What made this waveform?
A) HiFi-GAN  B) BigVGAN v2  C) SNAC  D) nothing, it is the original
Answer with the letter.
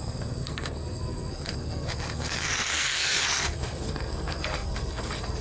C